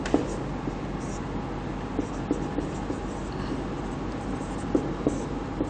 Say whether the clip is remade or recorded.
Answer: recorded